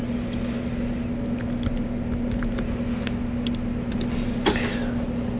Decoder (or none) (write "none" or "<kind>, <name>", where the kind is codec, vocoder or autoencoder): none